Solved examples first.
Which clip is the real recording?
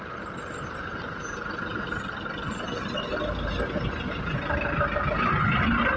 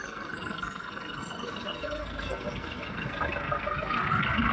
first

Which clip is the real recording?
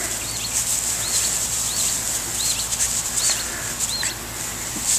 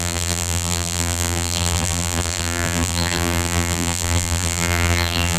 first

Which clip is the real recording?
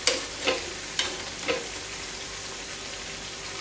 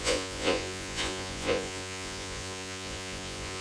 first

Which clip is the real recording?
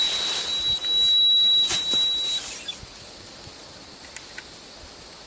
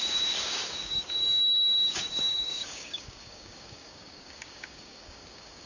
first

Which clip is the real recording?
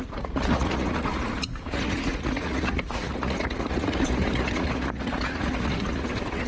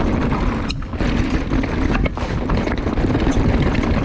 second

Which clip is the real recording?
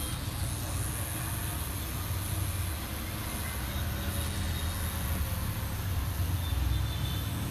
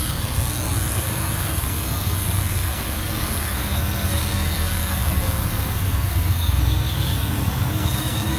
first